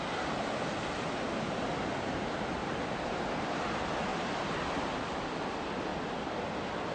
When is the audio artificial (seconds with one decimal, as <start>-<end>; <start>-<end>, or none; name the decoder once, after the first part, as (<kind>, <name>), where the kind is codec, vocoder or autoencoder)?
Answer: 2.6-3.2 (vocoder, BigVGAN v2); 4.1-4.8